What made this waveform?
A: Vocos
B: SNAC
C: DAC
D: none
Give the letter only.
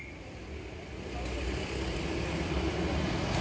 D